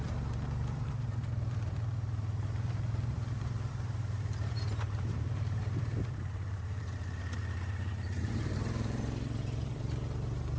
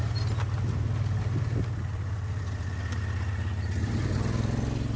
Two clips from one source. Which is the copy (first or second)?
first